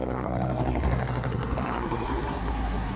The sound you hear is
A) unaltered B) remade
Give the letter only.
B